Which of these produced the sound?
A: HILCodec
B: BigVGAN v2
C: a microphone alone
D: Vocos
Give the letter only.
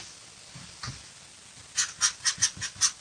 C